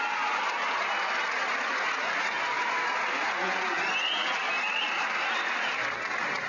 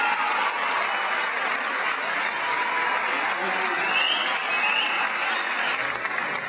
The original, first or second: second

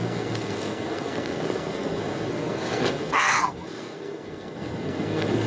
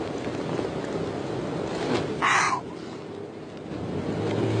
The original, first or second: second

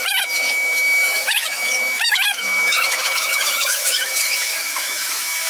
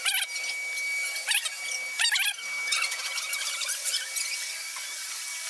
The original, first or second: second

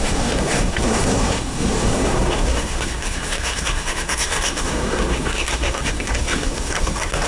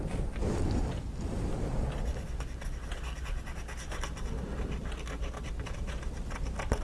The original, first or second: second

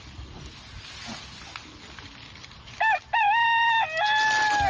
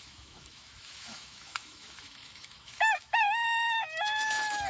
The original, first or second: first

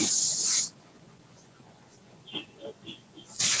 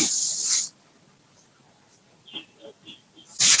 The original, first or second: second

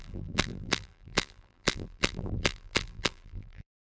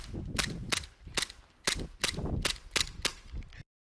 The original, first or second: second